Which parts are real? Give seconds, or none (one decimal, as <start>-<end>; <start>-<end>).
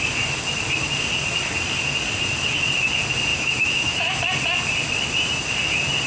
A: 0.0-3.3; 4.2-6.1